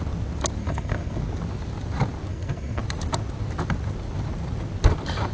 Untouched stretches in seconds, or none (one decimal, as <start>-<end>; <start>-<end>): 0.0-0.6; 1.2-2.3; 2.8-5.3